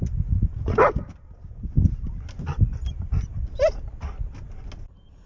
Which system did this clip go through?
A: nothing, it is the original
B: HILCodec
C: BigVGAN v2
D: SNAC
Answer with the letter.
A